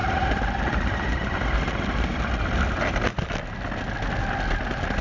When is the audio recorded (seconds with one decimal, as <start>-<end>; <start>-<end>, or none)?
2.9-5.0